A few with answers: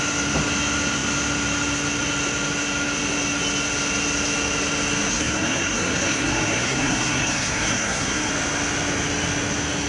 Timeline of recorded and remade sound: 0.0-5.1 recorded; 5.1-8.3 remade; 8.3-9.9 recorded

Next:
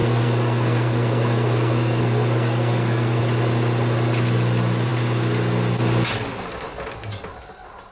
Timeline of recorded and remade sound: 0.0-3.2 remade; 3.2-7.9 recorded